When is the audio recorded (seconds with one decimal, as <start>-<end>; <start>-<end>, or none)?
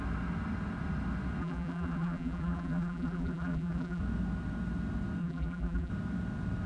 0.0-1.4; 4.0-5.2; 5.9-6.7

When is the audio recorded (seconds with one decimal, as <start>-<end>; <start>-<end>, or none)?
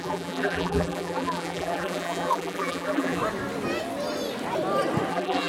3.2-5.1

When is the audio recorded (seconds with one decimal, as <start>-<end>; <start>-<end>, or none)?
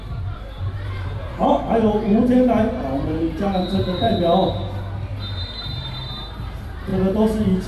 1.4-2.7; 4.1-5.1; 6.9-7.7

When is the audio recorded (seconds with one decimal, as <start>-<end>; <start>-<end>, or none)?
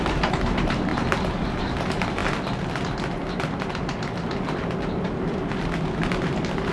0.9-1.6; 2.2-6.1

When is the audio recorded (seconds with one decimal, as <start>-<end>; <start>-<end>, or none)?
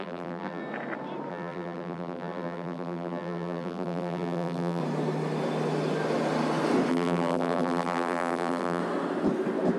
0.6-1.3; 4.8-6.9; 8.8-9.8